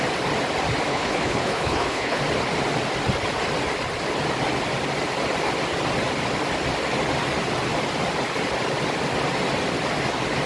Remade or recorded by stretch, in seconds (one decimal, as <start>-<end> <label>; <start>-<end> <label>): 0.0-0.9 recorded; 0.9-2.2 remade; 2.2-10.5 recorded